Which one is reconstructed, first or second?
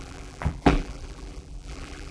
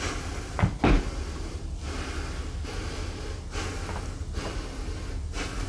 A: first